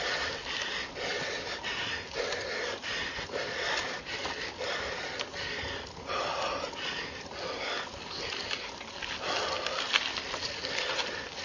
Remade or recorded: recorded